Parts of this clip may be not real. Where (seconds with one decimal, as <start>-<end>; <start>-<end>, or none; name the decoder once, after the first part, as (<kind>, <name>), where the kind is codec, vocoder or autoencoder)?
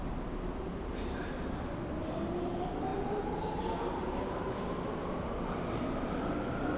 none